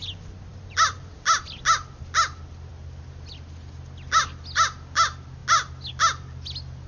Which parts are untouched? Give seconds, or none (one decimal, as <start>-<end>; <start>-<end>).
0.0-6.9